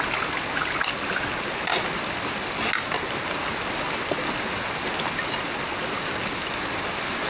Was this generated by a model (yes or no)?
no